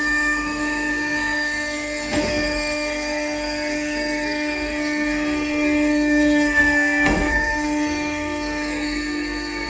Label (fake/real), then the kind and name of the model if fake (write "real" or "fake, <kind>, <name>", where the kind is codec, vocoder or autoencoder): fake, codec, SNAC